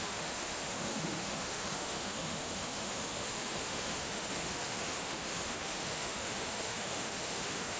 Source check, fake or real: fake